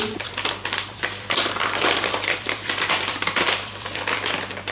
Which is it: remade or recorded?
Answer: remade